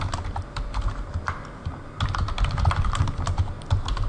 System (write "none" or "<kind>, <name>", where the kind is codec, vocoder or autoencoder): none